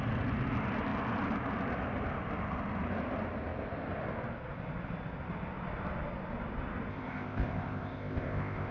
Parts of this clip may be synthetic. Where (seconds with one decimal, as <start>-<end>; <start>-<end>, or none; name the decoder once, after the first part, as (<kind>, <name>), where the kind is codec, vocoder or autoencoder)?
6.9-8.7 (codec, ZipCodec)